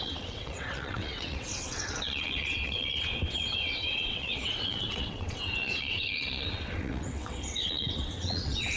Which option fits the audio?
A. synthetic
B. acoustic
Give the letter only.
A